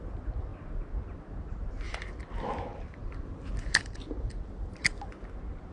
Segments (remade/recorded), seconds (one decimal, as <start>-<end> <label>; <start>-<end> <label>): 0.0-5.7 recorded